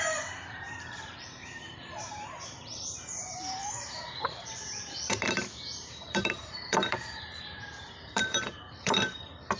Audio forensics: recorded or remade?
remade